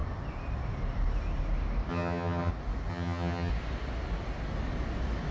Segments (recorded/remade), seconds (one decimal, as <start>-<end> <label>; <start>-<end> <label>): 0.0-1.9 recorded; 1.9-2.5 remade; 2.5-2.9 recorded; 2.9-3.5 remade; 3.5-5.3 recorded

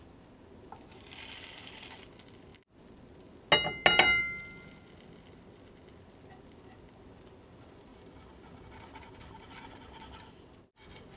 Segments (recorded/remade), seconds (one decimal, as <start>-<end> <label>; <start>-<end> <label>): 0.0-11.2 recorded

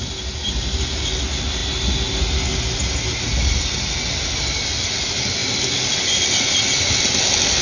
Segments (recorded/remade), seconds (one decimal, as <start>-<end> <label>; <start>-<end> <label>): 0.0-7.6 recorded

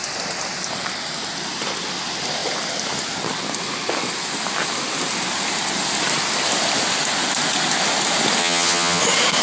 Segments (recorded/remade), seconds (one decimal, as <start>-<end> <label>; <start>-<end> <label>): 0.0-8.4 recorded; 8.4-9.0 remade; 9.0-9.4 recorded

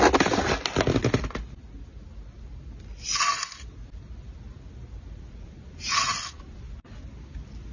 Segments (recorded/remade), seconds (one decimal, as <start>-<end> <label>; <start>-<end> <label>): 0.0-7.7 recorded